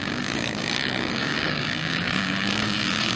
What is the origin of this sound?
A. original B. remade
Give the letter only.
B